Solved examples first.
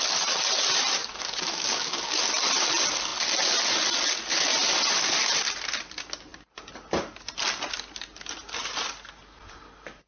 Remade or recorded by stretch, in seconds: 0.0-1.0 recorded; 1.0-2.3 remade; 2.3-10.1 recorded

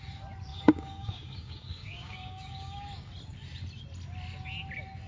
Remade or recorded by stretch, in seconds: 0.0-0.5 recorded; 0.5-3.1 remade; 3.1-5.1 recorded